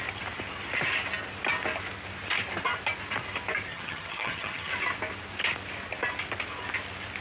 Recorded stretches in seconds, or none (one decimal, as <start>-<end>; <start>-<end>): 0.0-3.7; 4.7-7.2